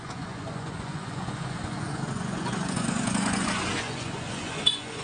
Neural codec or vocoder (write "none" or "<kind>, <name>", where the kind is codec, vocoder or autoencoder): vocoder, Vocos